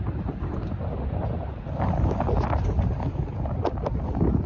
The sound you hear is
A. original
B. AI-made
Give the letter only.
A